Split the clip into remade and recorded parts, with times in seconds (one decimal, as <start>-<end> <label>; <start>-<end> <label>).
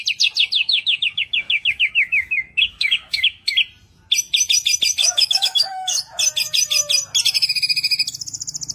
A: 0.0-0.6 recorded; 0.6-3.5 remade; 3.5-5.0 recorded; 5.0-6.0 remade; 6.0-8.7 recorded